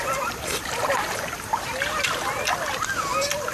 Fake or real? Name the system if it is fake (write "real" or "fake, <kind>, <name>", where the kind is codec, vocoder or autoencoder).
fake, vocoder, BigVGAN v2